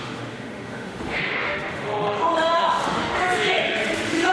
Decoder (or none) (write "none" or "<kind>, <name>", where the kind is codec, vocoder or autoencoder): autoencoder, DAC-VAE